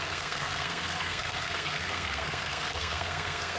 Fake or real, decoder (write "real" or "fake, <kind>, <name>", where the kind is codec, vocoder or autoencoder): fake, codec, SNAC